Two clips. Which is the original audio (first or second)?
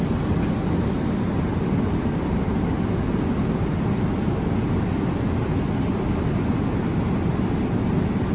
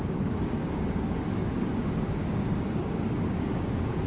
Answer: first